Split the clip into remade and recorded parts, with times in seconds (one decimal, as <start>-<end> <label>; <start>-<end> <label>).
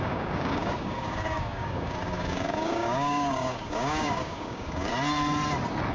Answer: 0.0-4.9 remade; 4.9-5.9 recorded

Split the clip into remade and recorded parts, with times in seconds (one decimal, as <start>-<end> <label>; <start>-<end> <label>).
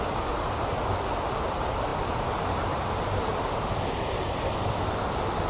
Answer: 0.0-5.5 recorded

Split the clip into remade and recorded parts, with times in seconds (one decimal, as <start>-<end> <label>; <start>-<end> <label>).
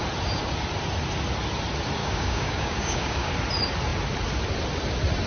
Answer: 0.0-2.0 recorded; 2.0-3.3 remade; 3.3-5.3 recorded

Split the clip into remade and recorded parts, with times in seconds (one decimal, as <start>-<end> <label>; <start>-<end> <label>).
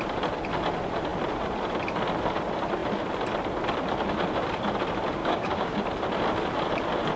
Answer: 0.0-5.2 recorded; 5.2-5.8 remade; 5.8-7.2 recorded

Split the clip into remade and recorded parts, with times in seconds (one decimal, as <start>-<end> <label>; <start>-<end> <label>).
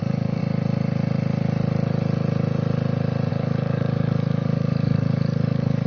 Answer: 0.0-0.4 remade; 0.4-3.3 recorded; 3.3-5.9 remade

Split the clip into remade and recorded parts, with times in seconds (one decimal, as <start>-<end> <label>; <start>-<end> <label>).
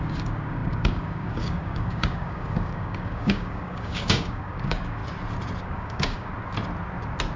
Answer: 0.0-5.0 remade; 5.0-5.6 recorded; 5.6-6.3 remade; 6.3-7.4 recorded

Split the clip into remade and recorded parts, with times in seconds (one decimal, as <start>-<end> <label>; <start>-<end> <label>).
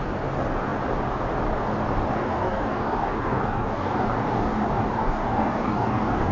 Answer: 0.0-2.1 recorded; 2.1-6.3 remade